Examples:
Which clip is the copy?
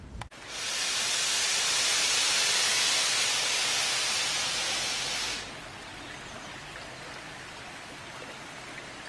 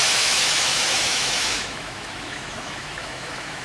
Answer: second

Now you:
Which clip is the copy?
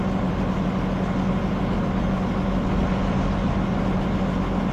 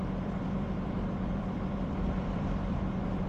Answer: second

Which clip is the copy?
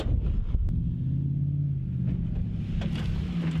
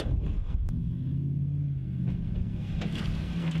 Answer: second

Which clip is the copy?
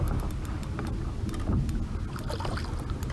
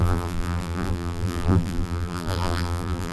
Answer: second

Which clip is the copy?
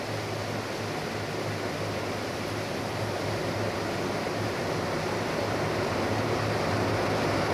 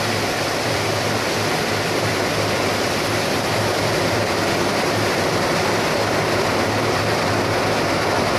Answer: second